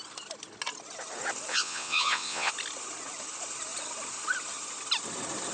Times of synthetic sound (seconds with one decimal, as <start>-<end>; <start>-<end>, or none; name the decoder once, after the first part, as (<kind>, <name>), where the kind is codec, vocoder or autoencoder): 1.5-2.5 (vocoder, WaveNeXt)